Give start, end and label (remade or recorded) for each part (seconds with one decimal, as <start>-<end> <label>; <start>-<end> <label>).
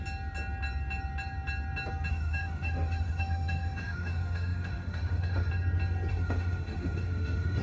0.0-2.1 recorded; 2.1-5.5 remade; 5.5-6.1 recorded; 6.1-7.6 remade